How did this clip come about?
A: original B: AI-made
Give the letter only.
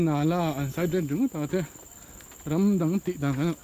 A